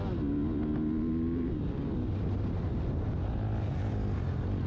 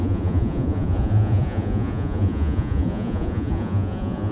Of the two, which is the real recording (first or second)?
first